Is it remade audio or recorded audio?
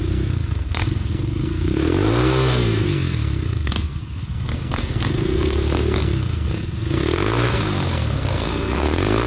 remade